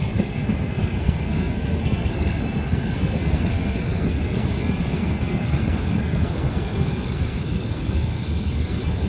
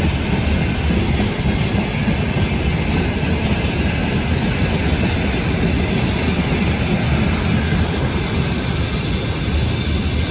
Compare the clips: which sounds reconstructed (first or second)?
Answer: first